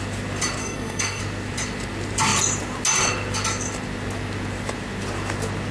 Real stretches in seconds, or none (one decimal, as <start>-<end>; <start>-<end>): 0.0-0.6; 1.2-5.7